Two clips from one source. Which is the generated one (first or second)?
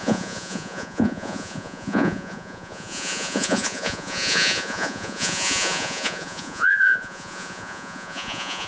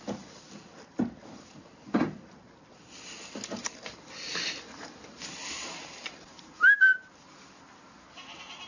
first